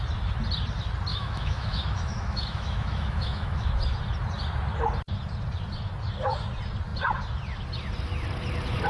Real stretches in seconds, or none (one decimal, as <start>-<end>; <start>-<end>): 0.0-1.1; 3.7-8.9